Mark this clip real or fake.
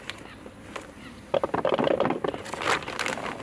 real